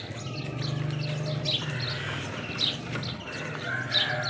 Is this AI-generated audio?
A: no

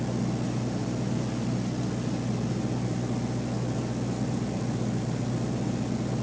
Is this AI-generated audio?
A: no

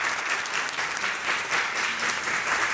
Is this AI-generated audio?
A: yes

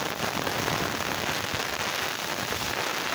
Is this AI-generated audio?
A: no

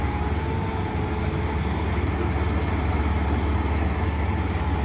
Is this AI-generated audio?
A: no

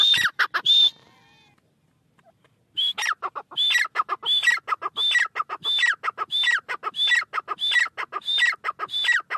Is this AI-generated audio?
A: no